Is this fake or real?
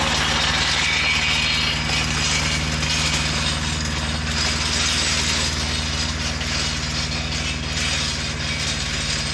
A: real